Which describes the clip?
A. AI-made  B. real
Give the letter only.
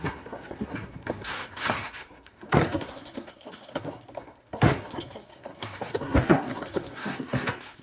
A